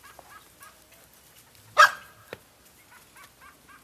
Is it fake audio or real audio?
real